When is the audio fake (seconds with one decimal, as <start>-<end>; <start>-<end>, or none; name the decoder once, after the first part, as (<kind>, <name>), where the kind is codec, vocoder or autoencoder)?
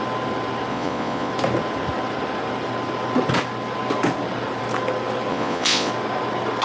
0.7-1.3 (vocoder, Vocos); 5.3-5.9